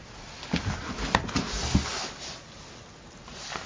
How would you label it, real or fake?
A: real